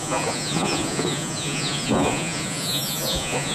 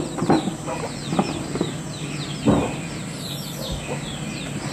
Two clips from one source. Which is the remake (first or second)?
first